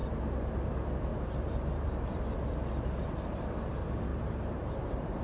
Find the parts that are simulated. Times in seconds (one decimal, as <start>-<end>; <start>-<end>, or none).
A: 1.1-2.2; 4.1-5.2